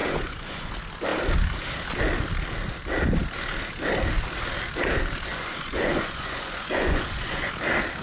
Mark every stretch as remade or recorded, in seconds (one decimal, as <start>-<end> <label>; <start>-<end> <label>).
0.0-0.7 remade; 0.7-5.3 recorded; 5.3-7.5 remade; 7.5-8.0 recorded